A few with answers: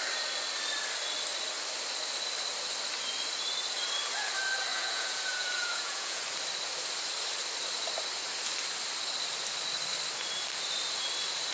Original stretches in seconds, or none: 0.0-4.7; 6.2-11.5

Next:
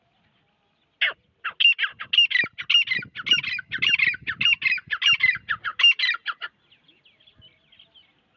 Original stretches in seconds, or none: 0.0-8.4

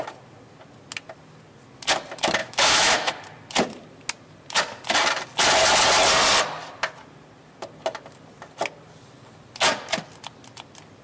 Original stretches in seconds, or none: 0.0-2.4; 3.1-11.0

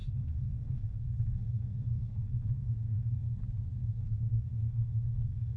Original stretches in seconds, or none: 3.4-3.8

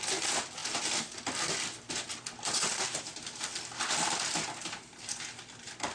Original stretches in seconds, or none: 0.0-5.9

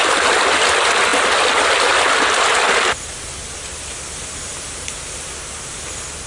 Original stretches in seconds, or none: 0.0-6.3

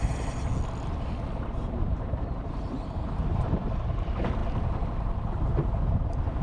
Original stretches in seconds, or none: 0.0-1.6; 3.5-6.4